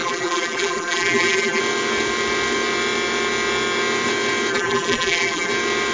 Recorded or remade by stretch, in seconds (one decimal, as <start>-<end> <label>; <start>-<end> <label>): 0.0-1.6 remade; 1.6-4.5 recorded; 4.5-5.5 remade; 5.5-5.9 recorded